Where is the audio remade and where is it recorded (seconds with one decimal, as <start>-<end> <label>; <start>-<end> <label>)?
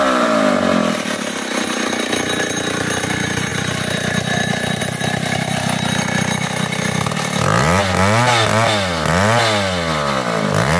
0.0-10.8 recorded